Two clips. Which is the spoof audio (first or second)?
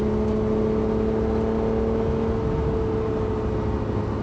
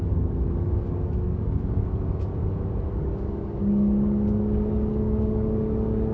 second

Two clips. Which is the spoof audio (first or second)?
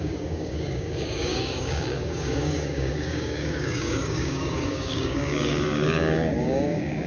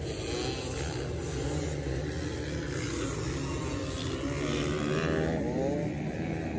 first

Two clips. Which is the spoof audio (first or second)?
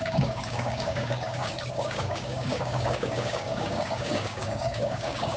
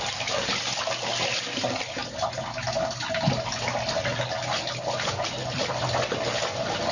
first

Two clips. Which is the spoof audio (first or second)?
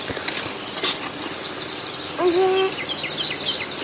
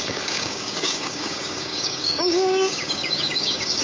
second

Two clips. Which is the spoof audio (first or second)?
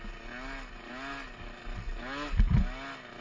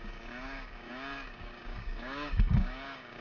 second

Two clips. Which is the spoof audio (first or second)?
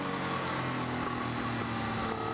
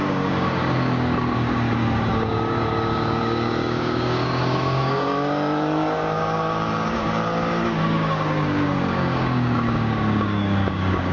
second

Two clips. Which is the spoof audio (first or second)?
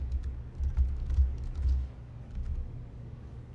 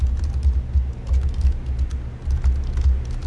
first